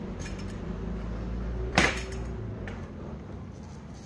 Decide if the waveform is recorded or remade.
remade